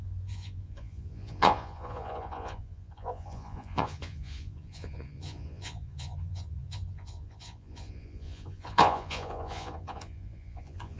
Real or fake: fake